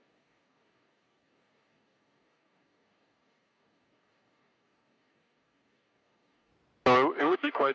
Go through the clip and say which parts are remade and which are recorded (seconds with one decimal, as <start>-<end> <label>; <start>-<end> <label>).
0.0-6.5 remade; 6.5-7.2 recorded; 7.2-7.7 remade